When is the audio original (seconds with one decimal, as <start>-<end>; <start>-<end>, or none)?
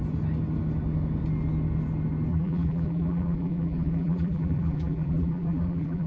0.0-2.3